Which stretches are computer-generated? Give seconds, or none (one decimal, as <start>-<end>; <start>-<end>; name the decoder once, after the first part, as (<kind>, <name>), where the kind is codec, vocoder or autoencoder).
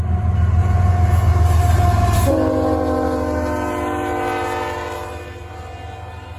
0.6-1.3 (vocoder, Vocos)